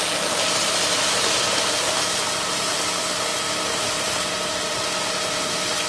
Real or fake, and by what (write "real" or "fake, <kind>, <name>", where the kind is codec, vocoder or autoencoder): real